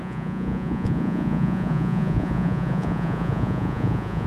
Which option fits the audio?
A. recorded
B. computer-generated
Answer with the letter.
B